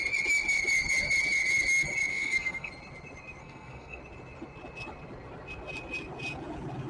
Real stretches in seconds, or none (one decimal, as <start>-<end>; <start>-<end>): 0.0-2.1; 2.7-3.4; 4.0-6.9